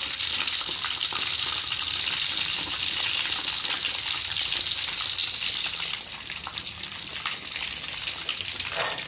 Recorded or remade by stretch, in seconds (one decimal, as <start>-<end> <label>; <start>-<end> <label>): 0.0-9.1 recorded